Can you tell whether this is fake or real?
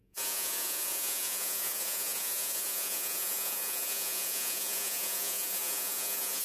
fake